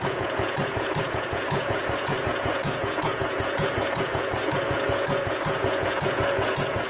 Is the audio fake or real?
fake